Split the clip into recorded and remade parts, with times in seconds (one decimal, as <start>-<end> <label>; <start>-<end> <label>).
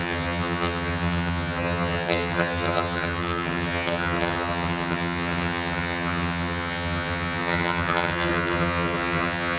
0.0-9.6 remade